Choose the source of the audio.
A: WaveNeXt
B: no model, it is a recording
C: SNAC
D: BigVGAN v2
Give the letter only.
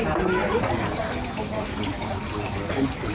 B